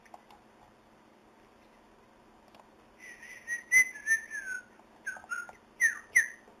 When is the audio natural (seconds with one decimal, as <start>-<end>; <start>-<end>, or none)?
0.0-6.6